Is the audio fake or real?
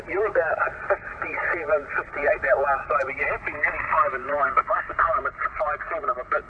real